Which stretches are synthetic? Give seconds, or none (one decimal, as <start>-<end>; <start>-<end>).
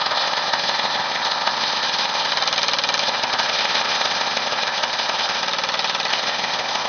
0.0-2.3; 3.0-5.4; 6.1-6.9